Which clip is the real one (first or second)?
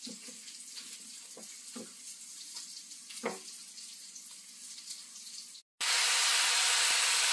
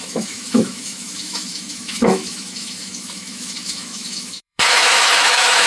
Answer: first